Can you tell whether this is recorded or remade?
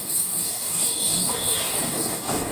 remade